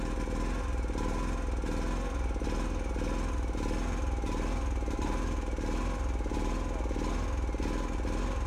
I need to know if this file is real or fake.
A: real